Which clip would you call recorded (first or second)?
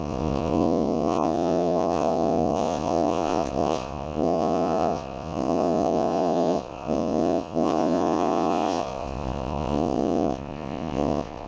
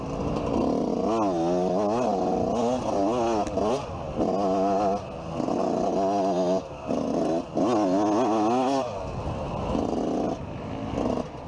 second